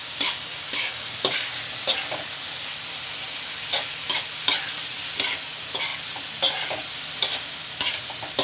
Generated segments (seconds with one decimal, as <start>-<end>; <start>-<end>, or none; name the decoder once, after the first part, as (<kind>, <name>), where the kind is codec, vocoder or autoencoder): 0.0-1.6 (codec, DAC)